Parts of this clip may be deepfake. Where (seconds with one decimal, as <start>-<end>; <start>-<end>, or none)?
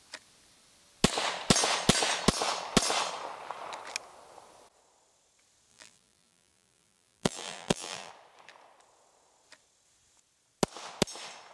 5.7-8.1